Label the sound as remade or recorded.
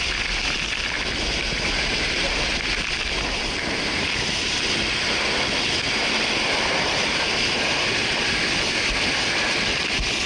recorded